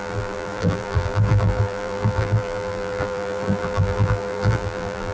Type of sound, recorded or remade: remade